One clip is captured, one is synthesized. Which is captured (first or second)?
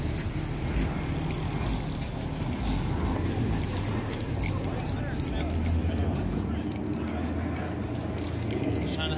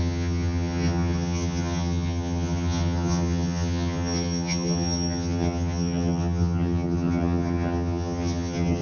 first